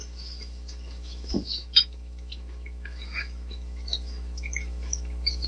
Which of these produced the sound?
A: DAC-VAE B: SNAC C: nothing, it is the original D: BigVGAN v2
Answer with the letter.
A